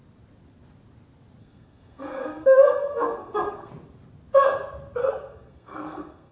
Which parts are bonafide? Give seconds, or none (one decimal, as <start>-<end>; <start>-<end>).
0.0-1.4; 3.7-5.0